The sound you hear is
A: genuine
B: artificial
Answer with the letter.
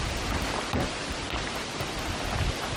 A